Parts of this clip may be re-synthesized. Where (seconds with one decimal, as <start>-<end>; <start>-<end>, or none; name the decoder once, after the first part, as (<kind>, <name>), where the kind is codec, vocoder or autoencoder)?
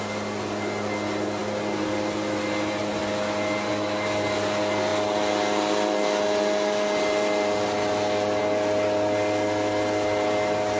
none